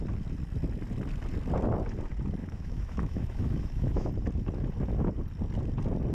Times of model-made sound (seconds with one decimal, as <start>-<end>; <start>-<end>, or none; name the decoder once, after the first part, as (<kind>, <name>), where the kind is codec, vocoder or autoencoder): 2.4-4.1 (autoencoder, DAC-VAE)